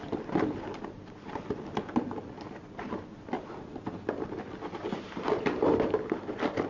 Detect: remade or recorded remade